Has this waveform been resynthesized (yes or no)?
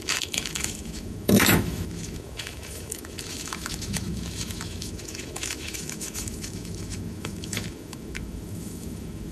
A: yes